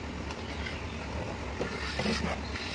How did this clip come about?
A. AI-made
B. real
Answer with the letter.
B